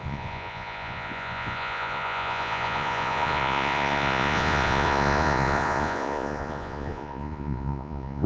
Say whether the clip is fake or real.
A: fake